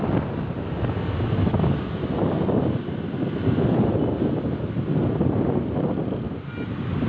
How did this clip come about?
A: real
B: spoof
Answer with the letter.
A